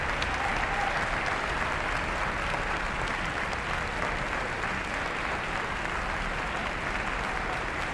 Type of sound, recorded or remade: recorded